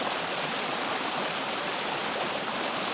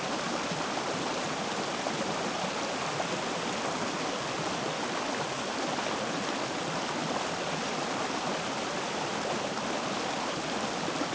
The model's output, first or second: first